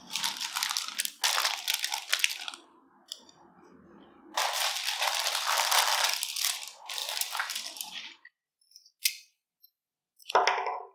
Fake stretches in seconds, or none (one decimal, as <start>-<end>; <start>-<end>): 7.0-8.3